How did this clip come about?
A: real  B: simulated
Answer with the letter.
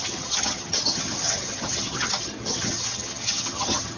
B